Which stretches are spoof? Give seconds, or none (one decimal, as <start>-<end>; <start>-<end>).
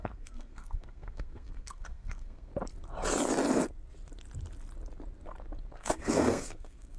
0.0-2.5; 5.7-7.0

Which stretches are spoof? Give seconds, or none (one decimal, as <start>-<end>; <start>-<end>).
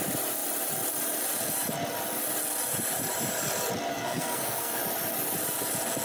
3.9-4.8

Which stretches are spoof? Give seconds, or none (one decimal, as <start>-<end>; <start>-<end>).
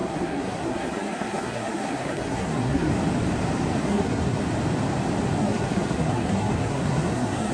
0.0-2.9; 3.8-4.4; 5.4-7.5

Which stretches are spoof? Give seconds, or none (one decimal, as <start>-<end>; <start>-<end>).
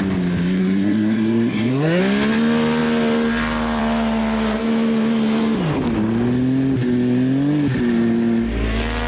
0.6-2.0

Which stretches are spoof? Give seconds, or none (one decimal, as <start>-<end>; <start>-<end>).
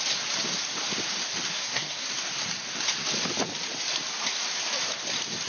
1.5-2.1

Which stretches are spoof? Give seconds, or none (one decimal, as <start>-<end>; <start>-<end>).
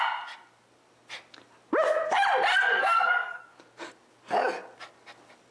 2.5-3.4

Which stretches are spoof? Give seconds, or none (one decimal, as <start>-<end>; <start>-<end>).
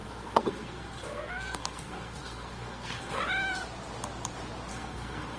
0.0-3.2; 4.7-5.4